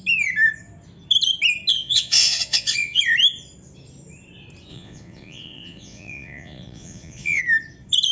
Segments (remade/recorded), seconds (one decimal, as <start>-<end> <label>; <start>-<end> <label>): 0.0-1.7 recorded; 1.7-3.0 remade; 3.0-4.7 recorded; 4.7-7.4 remade; 7.4-8.1 recorded